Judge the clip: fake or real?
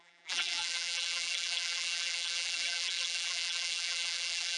fake